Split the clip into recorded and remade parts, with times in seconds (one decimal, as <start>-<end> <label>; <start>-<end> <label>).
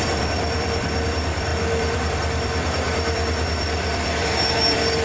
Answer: 0.0-5.0 remade